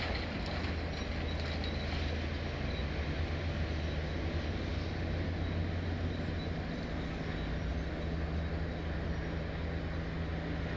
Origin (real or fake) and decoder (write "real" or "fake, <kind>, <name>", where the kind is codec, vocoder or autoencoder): real